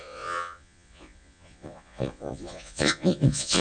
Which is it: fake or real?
fake